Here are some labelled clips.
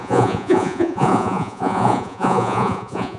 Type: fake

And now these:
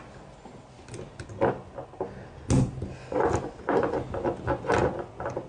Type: real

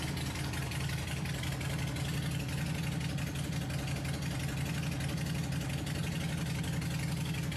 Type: real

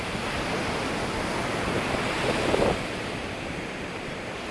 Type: fake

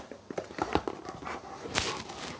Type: real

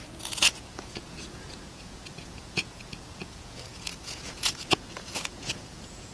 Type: fake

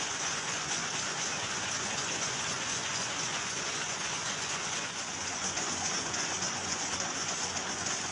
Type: fake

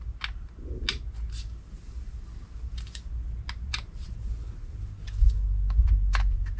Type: real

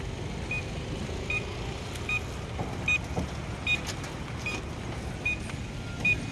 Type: real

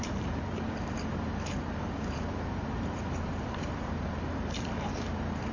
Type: fake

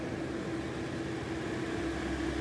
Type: real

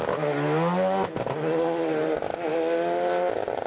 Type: real